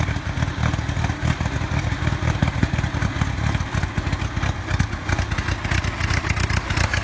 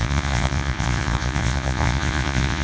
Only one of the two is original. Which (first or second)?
first